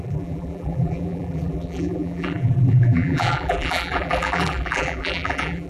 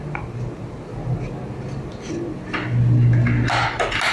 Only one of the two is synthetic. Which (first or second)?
first